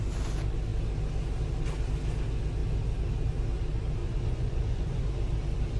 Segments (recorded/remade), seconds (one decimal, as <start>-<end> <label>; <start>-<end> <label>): 0.0-4.0 recorded; 4.0-5.0 remade; 5.0-5.8 recorded